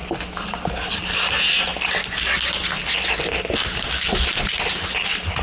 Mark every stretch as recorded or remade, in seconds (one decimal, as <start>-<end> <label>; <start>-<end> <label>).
0.0-5.4 recorded